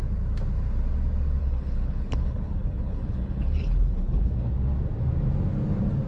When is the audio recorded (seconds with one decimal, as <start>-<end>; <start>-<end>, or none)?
0.0-1.4; 4.5-6.1